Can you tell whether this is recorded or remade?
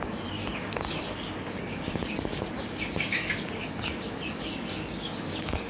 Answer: remade